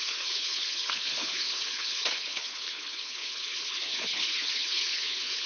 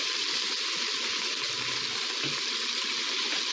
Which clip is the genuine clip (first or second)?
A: second